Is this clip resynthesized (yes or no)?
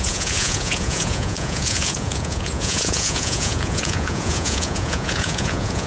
yes